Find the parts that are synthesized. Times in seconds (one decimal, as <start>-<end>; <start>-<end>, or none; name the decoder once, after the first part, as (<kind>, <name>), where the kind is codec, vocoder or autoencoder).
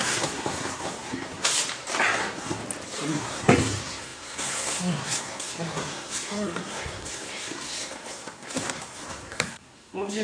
0.0-1.5 (codec, SNAC); 2.2-2.6; 3.1-10.2